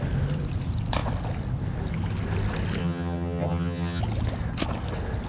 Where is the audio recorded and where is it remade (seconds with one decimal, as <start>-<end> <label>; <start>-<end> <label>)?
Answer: 0.0-2.8 recorded; 2.8-4.0 remade; 4.0-5.3 recorded